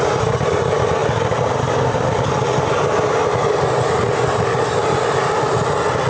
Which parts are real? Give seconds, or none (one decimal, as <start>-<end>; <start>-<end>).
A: 0.0-6.1